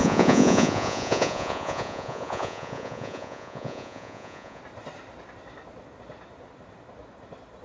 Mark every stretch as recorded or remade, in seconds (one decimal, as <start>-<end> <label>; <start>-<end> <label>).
0.0-4.6 remade; 4.6-7.6 recorded